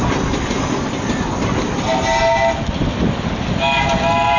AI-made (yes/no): no